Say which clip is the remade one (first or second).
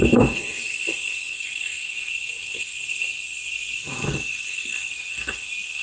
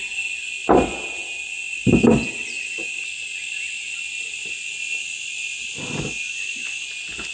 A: first